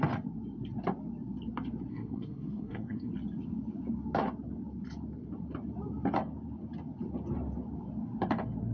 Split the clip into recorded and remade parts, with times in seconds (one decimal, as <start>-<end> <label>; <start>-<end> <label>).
0.0-1.9 recorded; 1.9-3.1 remade; 3.1-8.7 recorded